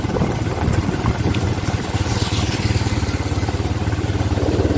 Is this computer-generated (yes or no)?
no